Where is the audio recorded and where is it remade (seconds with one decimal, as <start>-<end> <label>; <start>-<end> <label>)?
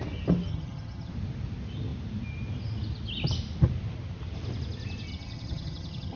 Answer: 0.0-0.5 recorded; 0.5-1.1 remade; 1.1-5.1 recorded; 5.1-6.2 remade